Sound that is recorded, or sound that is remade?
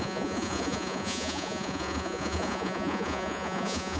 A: remade